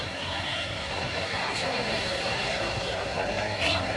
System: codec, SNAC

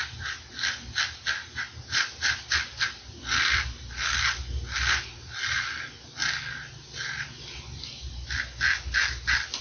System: none